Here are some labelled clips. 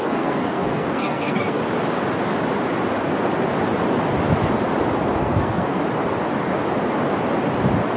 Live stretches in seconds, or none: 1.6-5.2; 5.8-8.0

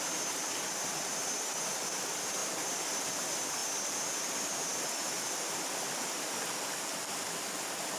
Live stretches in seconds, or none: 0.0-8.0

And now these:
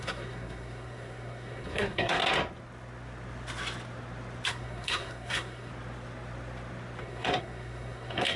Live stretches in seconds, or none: 2.2-4.5; 5.7-7.0